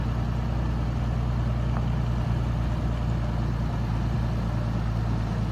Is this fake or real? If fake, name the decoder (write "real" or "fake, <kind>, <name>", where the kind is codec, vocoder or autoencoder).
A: real